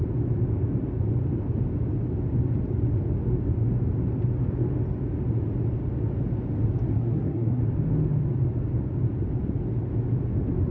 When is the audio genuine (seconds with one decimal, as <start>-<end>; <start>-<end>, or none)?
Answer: 0.0-6.9; 7.6-10.7